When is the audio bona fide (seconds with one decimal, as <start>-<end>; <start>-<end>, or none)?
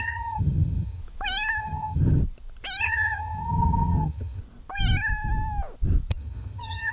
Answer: 1.0-1.6; 2.2-2.8; 4.4-6.1